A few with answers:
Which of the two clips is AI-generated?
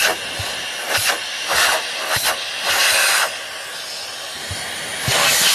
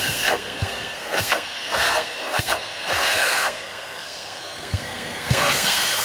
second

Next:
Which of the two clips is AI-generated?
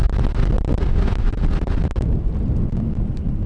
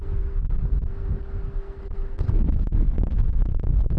second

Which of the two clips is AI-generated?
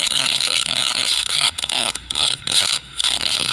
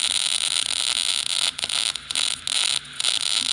first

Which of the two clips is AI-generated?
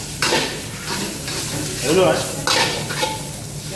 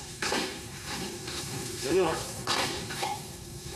second